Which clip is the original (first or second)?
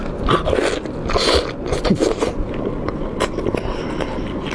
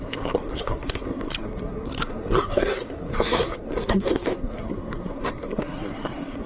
first